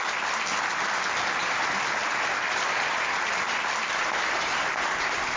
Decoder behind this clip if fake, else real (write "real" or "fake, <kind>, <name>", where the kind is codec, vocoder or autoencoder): fake, vocoder, BigVGAN v2